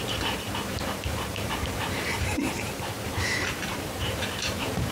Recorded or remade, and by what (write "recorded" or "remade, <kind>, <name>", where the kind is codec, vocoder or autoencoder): remade, vocoder, BigVGAN v2